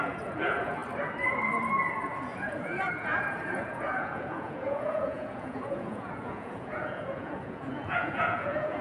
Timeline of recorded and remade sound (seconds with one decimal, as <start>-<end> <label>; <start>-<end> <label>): 0.0-0.8 remade; 0.8-1.9 recorded; 1.9-8.8 remade